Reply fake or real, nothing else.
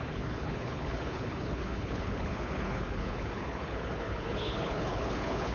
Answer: fake